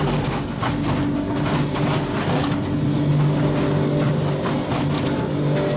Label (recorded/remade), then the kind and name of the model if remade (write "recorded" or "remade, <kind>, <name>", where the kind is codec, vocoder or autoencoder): recorded